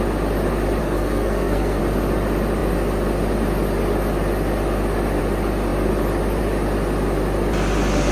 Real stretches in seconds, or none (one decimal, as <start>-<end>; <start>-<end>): 0.0-0.8; 1.8-8.1